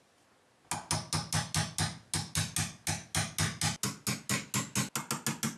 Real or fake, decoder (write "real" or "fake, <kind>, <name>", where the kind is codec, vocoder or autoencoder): real